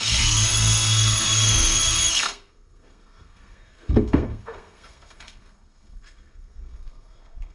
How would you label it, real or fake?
fake